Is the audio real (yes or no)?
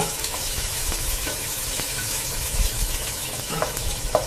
no